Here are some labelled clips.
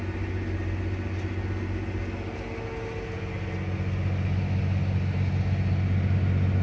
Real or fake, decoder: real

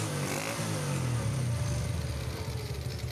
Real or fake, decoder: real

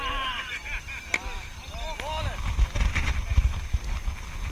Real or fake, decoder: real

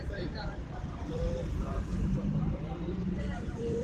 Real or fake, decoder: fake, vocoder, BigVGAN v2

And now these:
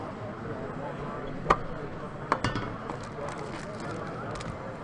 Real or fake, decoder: real